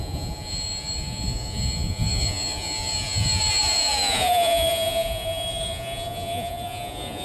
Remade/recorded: remade